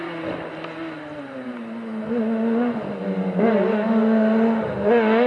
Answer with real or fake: real